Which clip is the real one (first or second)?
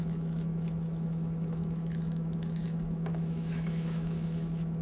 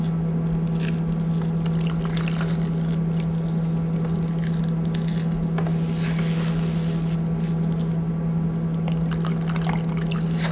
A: second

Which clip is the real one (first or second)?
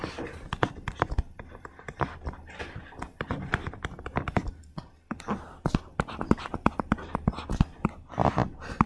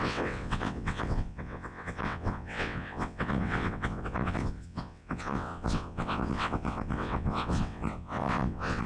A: first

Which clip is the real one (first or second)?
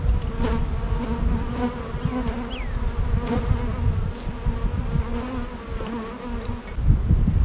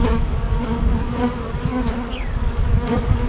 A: first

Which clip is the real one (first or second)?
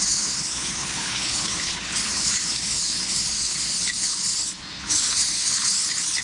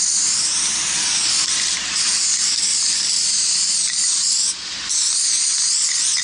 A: second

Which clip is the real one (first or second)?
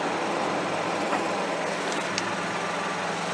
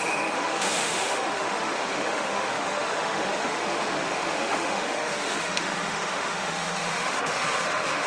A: first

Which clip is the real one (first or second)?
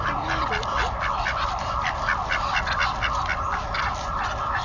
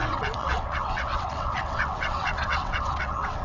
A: first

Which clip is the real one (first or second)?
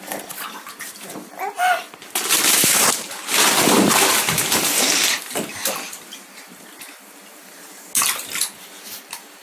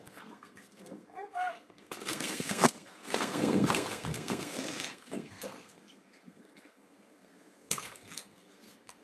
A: first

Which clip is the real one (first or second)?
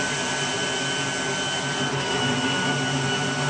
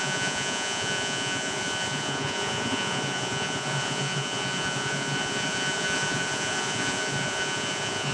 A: first